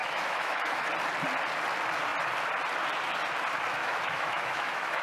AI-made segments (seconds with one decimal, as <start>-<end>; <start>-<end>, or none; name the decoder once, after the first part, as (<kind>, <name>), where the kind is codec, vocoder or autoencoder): 0.0-0.9 (autoencoder, DAC-VAE); 3.8-5.0